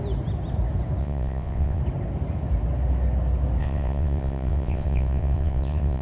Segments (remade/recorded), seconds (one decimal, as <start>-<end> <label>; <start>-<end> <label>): 0.0-1.0 recorded; 1.0-1.8 remade; 1.8-3.6 recorded; 3.6-6.0 remade

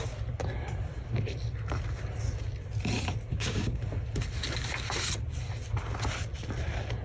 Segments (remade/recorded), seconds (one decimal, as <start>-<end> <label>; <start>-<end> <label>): 0.0-3.3 recorded; 3.3-3.8 remade; 3.8-7.0 recorded

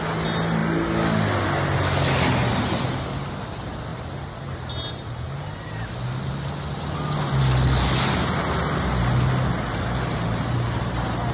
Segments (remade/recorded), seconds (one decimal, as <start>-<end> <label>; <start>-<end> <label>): 0.0-11.3 recorded

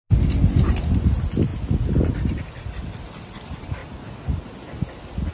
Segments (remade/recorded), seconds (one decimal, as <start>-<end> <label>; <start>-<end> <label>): 0.0-5.3 recorded

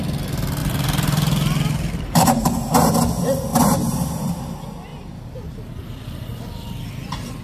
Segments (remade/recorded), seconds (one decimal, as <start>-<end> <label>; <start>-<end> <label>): 0.0-0.6 recorded; 0.6-2.5 remade; 2.5-3.5 recorded; 3.5-4.4 remade; 4.4-7.4 recorded

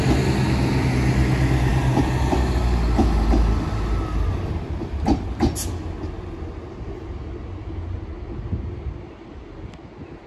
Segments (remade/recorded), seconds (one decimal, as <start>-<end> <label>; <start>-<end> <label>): 0.0-10.3 recorded

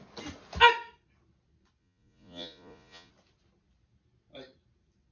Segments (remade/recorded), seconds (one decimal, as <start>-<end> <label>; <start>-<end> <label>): 0.0-1.8 recorded; 1.8-3.1 remade; 3.1-5.1 recorded

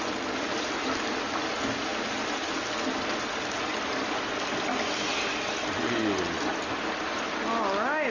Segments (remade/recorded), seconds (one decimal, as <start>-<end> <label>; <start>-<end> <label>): 0.0-8.1 recorded